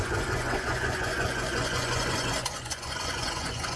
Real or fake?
fake